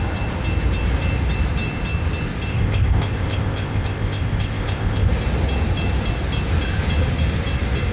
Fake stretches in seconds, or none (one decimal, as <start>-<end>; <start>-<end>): 2.5-5.1